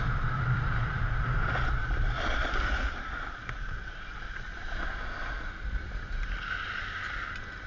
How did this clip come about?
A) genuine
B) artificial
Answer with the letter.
A